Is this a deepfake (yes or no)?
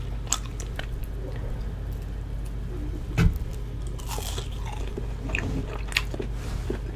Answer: no